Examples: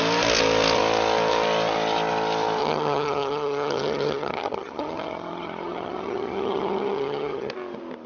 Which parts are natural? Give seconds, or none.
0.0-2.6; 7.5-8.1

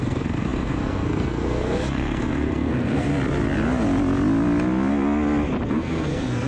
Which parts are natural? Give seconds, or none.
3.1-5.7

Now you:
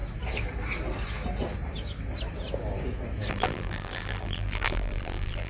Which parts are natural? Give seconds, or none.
0.0-3.3

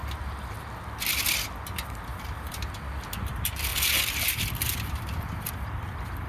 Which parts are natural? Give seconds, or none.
0.0-2.1; 3.0-3.7

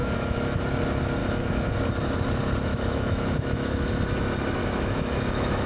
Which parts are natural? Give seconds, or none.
0.6-1.2; 1.7-2.7; 3.9-4.6

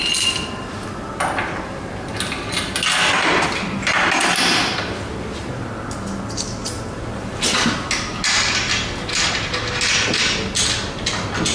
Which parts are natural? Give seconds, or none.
0.0-11.5